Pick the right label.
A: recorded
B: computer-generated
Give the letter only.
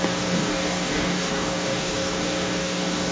B